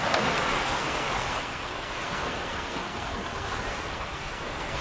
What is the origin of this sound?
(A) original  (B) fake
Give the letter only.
B